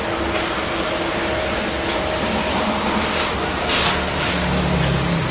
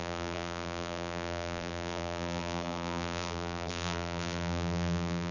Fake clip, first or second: second